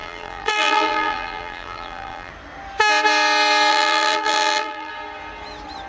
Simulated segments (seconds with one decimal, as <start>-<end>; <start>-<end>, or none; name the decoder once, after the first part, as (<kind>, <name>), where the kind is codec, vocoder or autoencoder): 0.0-2.3 (vocoder, BigVGAN v2); 3.7-4.9